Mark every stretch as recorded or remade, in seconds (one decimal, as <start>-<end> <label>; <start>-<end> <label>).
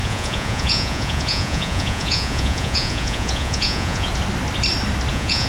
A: 0.0-4.1 remade; 4.1-5.1 recorded; 5.1-5.5 remade